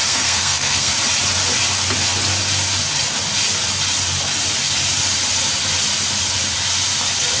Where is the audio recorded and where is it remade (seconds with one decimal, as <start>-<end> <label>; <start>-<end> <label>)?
0.0-0.9 remade; 0.9-7.4 recorded